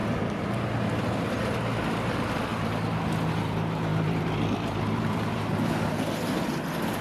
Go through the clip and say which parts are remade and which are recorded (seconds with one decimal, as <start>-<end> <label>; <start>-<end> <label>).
0.0-0.6 recorded; 0.6-2.5 remade; 2.5-3.3 recorded; 3.3-7.0 remade